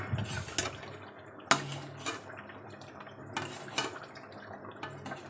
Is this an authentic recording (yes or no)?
yes